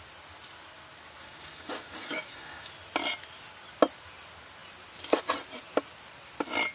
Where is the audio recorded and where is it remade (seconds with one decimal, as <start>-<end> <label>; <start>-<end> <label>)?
0.0-1.2 recorded; 1.2-2.7 remade; 2.7-6.7 recorded

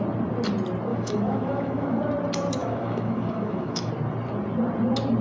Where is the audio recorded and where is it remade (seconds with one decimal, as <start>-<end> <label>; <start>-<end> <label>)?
0.0-0.9 recorded; 0.9-2.0 remade; 2.0-2.6 recorded; 2.6-3.9 remade; 3.9-5.2 recorded